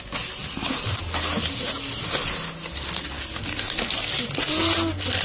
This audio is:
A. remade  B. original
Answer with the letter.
B